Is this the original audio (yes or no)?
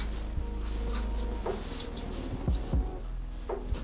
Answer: no